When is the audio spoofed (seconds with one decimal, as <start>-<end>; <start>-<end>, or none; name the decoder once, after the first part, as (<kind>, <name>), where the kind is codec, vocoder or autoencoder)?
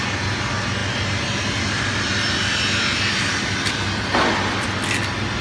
none